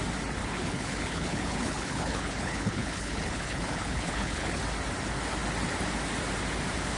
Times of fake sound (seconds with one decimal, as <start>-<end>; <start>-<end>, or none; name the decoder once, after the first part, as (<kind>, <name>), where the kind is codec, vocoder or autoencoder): 0.4-4.6 (codec, HILCodec)